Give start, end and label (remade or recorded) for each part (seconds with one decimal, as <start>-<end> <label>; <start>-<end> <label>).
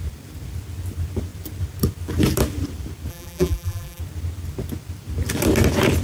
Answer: 0.0-3.1 recorded; 3.1-4.0 remade; 4.0-6.0 recorded